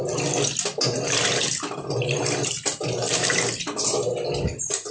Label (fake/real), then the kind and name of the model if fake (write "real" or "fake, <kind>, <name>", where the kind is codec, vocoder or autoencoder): real